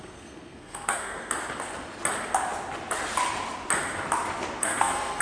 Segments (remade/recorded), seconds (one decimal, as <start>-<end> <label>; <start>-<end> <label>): 0.0-1.3 remade; 1.3-4.6 recorded; 4.6-5.2 remade